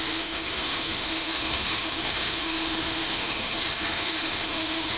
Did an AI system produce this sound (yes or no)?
yes